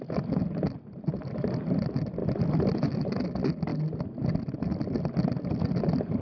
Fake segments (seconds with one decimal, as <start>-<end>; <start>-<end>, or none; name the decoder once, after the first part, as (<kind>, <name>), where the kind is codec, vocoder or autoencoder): 2.2-3.2 (vocoder, BigVGAN v2)